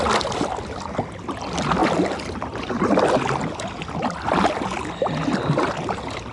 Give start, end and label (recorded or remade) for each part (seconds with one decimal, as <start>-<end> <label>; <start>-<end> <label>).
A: 0.0-6.3 recorded